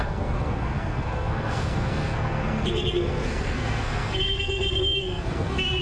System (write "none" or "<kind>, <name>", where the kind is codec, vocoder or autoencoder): codec, SNAC